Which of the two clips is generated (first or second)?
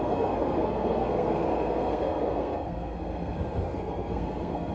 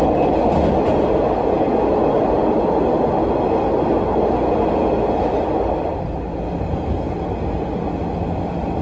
first